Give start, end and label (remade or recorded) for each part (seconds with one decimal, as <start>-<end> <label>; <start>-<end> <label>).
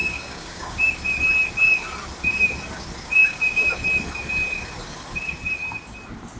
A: 0.0-0.9 remade; 0.9-3.2 recorded; 3.2-3.7 remade; 3.7-6.4 recorded